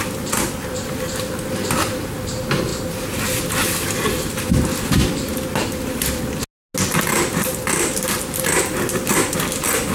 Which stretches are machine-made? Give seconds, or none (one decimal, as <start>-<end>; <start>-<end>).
none